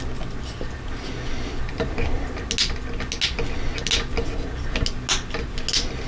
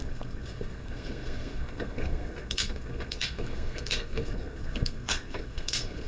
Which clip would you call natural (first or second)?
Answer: first